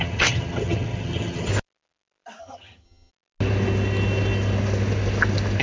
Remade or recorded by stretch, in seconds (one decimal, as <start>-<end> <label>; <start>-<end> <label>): 0.0-1.5 remade; 1.5-2.4 recorded; 2.4-3.1 remade; 3.1-5.6 recorded